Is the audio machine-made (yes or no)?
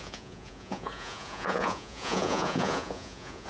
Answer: yes